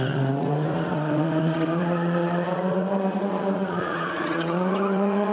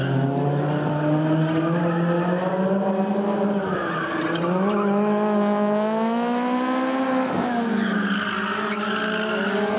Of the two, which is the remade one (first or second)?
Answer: first